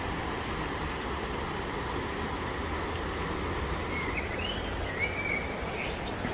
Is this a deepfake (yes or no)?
no